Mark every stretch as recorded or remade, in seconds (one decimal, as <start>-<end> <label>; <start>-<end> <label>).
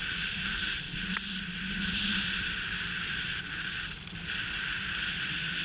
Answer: 0.0-5.6 recorded